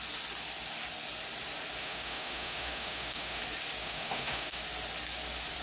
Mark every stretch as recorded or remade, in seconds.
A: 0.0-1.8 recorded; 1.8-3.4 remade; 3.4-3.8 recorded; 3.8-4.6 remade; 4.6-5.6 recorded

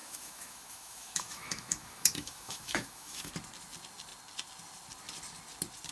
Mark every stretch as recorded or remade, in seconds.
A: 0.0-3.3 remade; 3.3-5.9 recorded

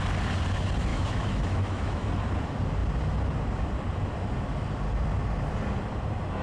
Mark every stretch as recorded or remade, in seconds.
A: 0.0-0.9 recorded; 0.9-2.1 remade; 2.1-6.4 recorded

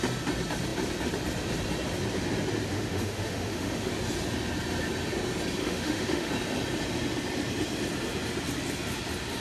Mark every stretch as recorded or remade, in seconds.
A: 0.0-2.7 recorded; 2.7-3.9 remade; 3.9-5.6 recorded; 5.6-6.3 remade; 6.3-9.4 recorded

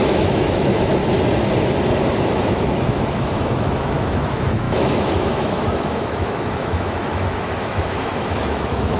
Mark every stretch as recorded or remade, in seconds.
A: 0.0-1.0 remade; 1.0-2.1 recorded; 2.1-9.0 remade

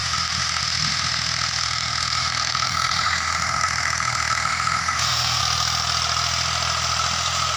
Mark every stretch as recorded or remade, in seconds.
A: 0.0-5.4 remade; 5.4-7.6 recorded

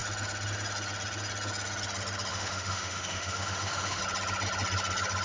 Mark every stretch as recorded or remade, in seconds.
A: 0.0-2.3 recorded; 2.3-4.0 remade; 4.0-5.2 recorded